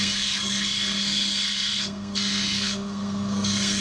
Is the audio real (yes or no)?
no